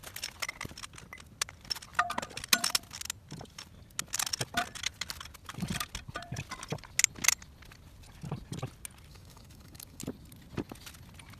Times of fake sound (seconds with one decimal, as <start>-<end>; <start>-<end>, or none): 9.1-10.0